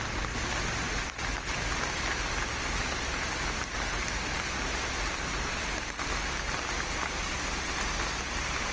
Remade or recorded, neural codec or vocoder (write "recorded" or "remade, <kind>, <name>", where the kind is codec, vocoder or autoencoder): recorded